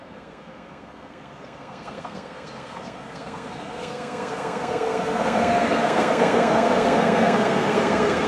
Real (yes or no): no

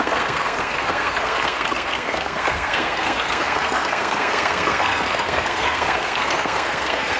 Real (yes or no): no